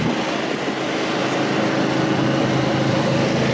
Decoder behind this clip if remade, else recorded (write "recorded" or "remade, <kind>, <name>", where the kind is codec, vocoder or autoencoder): recorded